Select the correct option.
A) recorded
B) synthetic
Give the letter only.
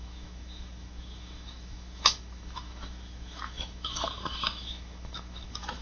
B